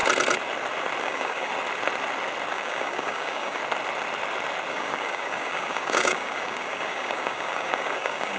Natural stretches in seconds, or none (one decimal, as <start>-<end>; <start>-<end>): 0.0-1.0; 1.5-2.5; 3.6-4.7